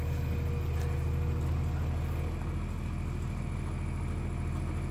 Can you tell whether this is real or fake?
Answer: real